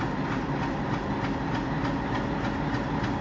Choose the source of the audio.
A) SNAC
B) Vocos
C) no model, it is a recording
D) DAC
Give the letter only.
C